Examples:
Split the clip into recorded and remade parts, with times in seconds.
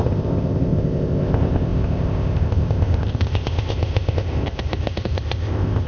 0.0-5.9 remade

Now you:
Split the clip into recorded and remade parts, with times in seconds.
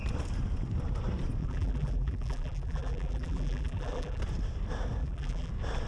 0.0-1.4 recorded; 1.4-4.2 remade; 4.2-5.0 recorded; 5.0-5.5 remade; 5.5-5.9 recorded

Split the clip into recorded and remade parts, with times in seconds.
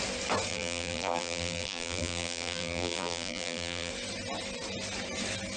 0.0-0.5 recorded; 0.5-3.9 remade; 3.9-5.6 recorded